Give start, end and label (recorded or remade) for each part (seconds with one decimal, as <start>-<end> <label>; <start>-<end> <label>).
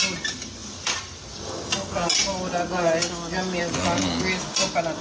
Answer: 0.0-5.0 recorded